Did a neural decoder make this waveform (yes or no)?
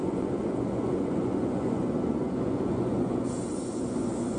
yes